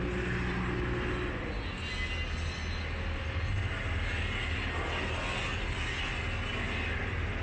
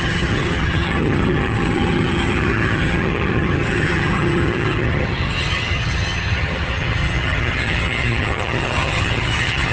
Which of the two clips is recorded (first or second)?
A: first